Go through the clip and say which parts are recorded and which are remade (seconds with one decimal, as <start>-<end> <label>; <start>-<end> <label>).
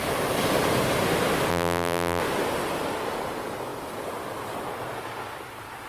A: 0.0-1.5 recorded; 1.5-2.2 remade; 2.2-5.9 recorded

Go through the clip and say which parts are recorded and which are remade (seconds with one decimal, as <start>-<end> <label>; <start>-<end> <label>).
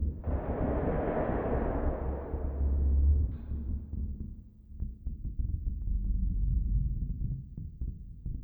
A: 0.0-3.1 recorded; 3.1-5.7 remade; 5.7-6.2 recorded; 6.2-8.0 remade; 8.0-8.4 recorded